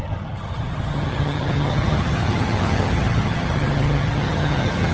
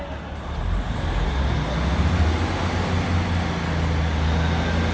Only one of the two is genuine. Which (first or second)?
second